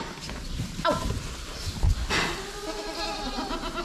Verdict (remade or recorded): recorded